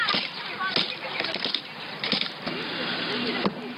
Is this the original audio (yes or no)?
yes